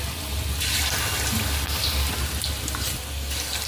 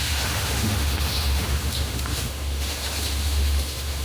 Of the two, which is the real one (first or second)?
first